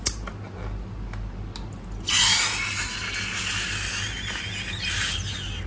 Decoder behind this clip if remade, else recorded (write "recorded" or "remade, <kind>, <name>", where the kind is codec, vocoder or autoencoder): recorded